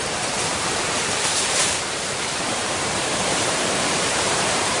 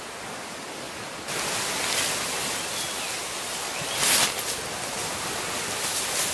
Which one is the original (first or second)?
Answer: second